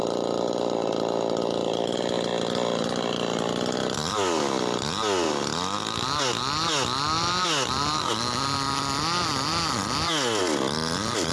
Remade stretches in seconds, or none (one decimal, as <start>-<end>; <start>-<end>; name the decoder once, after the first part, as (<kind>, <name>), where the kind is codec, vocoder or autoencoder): none